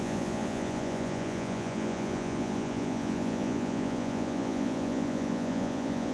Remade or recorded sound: remade